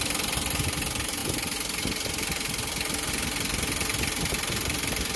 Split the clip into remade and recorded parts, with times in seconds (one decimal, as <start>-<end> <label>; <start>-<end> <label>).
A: 0.0-5.2 recorded